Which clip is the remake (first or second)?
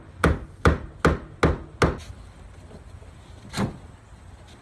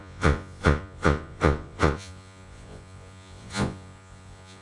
second